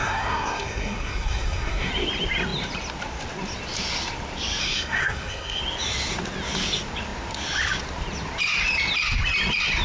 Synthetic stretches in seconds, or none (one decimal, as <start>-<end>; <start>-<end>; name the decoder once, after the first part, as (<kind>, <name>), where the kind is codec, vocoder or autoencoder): 0.0-1.9 (codec, SNAC); 4.6-5.6